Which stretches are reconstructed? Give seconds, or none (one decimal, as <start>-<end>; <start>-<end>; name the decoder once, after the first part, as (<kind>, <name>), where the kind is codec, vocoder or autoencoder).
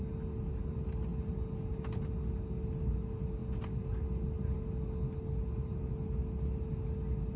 none